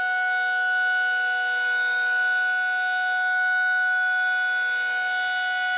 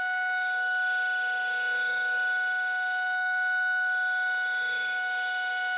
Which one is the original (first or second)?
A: first